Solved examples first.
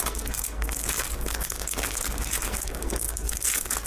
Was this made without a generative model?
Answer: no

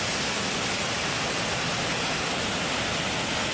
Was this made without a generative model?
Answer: yes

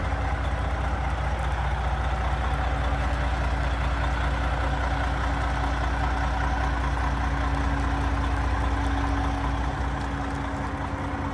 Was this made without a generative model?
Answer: yes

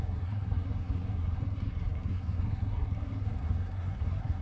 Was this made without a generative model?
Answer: no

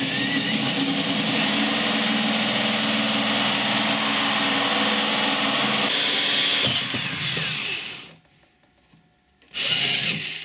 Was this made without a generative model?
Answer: yes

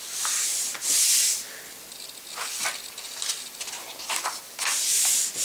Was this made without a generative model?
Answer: yes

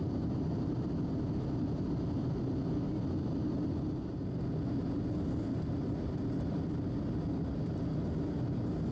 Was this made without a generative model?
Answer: yes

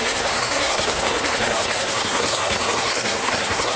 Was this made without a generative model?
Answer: no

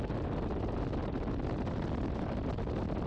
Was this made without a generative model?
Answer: yes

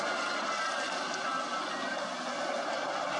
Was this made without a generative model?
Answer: yes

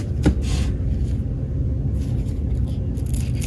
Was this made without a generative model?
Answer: yes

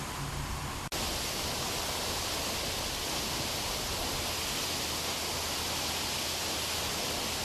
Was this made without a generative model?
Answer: yes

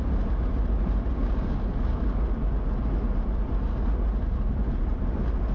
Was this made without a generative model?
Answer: yes